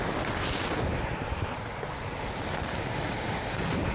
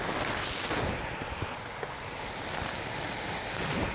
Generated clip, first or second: first